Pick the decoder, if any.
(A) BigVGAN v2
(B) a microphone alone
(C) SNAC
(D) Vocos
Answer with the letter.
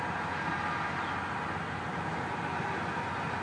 B